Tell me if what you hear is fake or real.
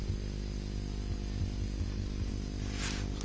real